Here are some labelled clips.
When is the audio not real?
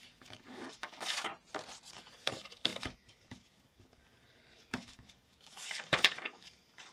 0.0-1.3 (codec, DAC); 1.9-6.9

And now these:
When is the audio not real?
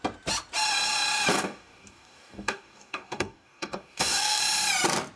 1.3-4.4 (codec, DAC)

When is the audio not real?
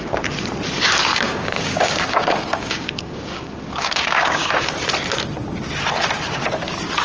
1.1-4.5 (codec, DAC)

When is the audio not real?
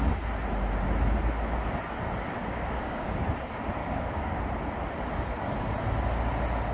2.4-3.2 (codec, DAC); 3.8-4.4